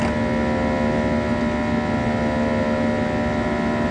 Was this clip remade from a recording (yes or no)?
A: no